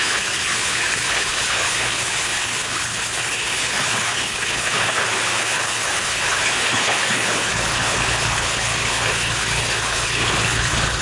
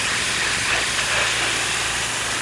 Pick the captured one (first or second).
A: second